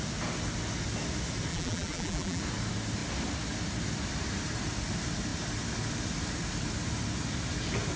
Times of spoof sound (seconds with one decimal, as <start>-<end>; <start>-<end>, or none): 1.5-2.4